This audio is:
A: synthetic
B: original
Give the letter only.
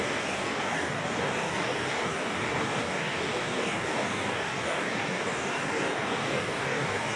A